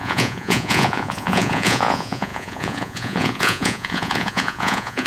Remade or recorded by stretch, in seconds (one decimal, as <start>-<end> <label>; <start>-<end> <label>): 0.0-5.1 remade